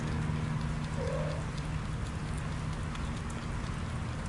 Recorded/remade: recorded